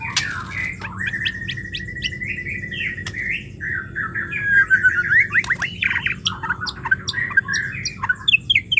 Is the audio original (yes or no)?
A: yes